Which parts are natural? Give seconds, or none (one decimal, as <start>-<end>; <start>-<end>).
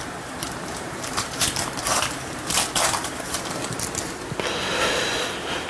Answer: 3.4-5.7